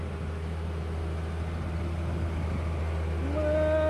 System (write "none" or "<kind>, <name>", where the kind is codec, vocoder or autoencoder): none